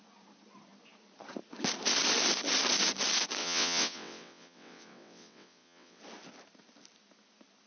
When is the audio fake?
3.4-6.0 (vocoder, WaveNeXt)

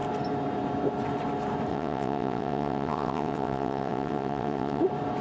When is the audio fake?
1.7-4.8 (vocoder, WaveNeXt)

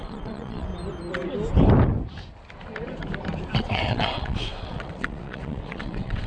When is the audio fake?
0.0-0.7 (vocoder, WaveNeXt); 3.6-6.3

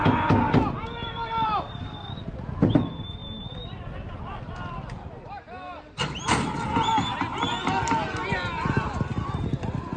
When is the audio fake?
none

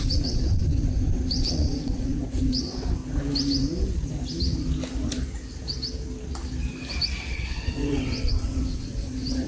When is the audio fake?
0.0-3.0 (vocoder, WaveNeXt); 7.2-9.5

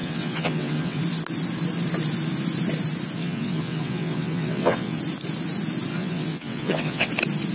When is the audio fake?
0.0-1.0 (vocoder, WaveNeXt); 3.2-5.0; 5.9-7.1

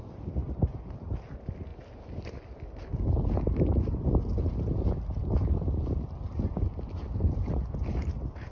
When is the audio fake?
none

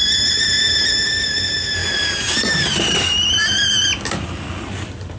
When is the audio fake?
none